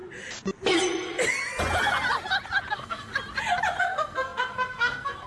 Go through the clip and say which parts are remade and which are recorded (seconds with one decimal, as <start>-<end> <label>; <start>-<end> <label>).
0.0-2.7 recorded; 2.7-3.1 remade; 3.1-3.8 recorded; 3.8-5.3 remade